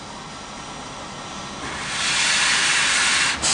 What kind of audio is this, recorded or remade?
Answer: recorded